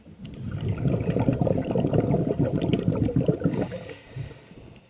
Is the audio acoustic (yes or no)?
yes